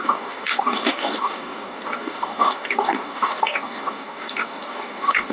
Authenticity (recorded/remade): remade